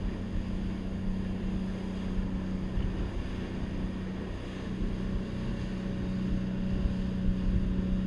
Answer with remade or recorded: recorded